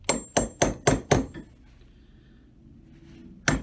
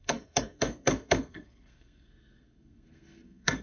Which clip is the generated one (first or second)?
second